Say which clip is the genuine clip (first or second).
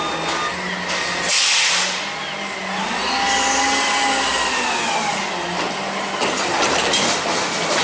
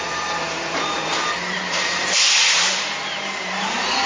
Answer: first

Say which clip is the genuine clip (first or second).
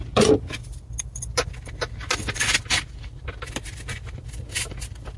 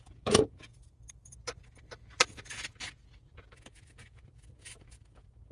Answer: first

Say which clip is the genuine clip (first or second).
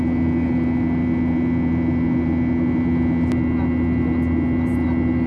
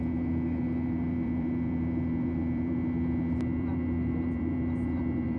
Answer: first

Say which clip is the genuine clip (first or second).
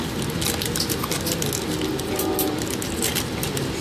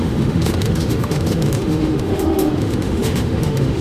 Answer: first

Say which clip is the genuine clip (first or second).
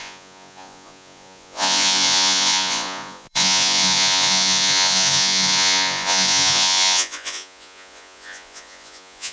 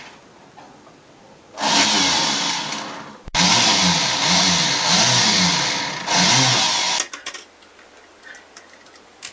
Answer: second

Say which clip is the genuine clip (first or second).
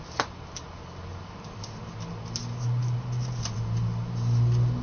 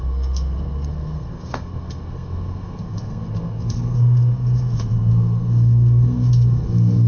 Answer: first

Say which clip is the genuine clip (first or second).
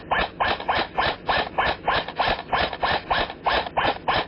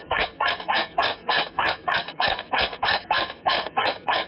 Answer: first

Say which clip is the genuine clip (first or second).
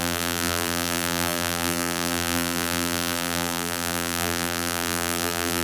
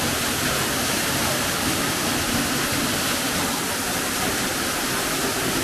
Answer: second